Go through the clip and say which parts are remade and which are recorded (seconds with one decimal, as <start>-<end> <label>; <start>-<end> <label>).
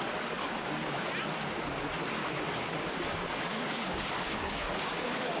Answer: 0.0-0.4 recorded; 0.4-1.1 remade; 1.1-2.2 recorded; 2.2-5.4 remade